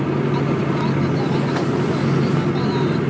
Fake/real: real